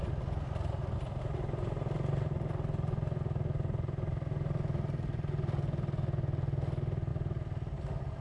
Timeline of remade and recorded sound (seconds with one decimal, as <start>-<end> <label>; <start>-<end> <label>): 0.0-8.2 recorded